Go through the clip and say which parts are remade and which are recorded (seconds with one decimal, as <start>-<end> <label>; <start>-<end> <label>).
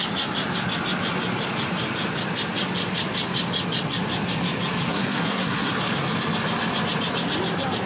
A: 0.0-4.9 recorded; 4.9-5.7 remade; 5.7-7.9 recorded